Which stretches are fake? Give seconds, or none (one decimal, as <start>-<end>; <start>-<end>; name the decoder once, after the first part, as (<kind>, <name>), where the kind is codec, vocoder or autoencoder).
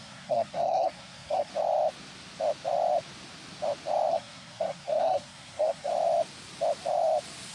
0.0-1.5 (codec, SNAC); 4.1-5.9